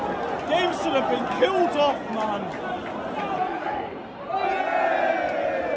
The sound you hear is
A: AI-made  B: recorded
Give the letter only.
B